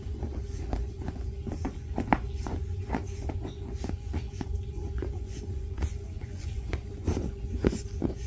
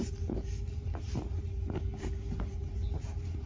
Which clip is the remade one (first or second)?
first